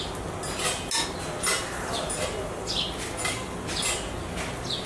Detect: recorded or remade recorded